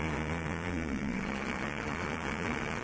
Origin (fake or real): fake